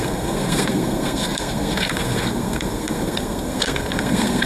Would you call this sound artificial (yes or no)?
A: yes